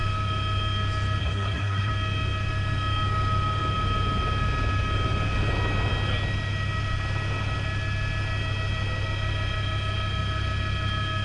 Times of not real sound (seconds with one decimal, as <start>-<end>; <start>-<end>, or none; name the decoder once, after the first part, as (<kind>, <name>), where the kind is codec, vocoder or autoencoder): 1.2-1.9 (codec, SNAC)